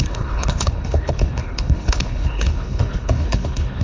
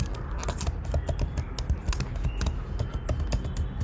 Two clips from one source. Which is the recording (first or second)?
second